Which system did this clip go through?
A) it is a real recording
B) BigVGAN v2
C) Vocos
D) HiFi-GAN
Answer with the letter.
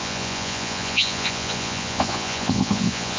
C